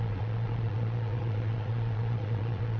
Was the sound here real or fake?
fake